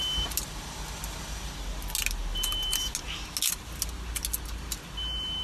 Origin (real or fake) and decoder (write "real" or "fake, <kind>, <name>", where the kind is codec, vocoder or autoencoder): real